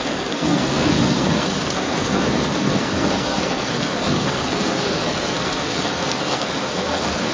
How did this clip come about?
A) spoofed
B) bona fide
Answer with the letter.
A